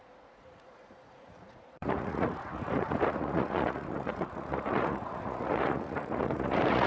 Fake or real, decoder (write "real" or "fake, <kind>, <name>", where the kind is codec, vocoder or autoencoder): fake, vocoder, Vocos